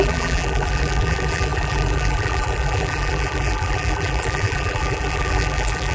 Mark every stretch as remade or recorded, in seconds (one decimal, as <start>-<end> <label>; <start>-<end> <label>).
0.0-5.9 remade

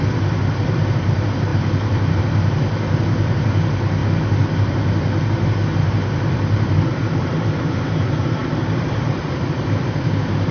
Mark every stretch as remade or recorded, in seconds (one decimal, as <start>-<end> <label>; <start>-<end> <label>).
0.0-10.5 remade

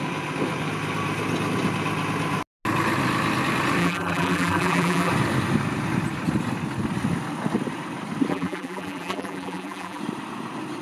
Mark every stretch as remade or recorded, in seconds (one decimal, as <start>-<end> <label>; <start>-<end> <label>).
0.0-3.8 recorded; 3.8-5.1 remade; 5.1-8.3 recorded; 8.3-10.0 remade; 10.0-10.8 recorded